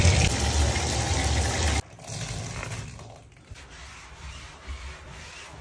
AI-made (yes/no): no